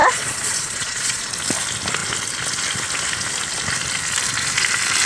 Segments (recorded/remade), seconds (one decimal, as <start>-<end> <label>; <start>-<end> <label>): 0.0-1.3 remade; 1.3-5.1 recorded